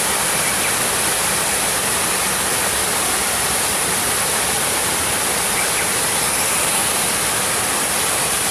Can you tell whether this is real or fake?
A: real